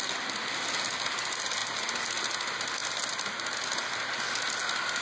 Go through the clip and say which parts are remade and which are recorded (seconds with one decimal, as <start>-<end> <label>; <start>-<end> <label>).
0.0-5.0 recorded